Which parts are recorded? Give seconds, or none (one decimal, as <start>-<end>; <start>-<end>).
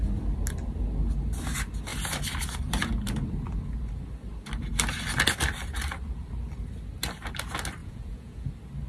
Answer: 0.0-7.8; 8.5-8.9